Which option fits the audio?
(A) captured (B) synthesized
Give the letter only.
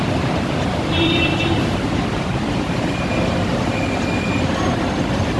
B